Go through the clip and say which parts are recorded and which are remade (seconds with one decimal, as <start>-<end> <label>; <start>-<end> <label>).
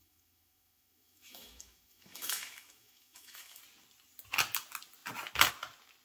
0.0-3.6 remade; 3.6-6.0 recorded